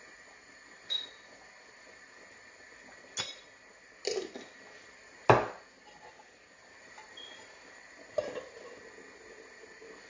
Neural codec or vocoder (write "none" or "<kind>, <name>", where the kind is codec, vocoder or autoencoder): none